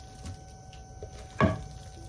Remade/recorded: recorded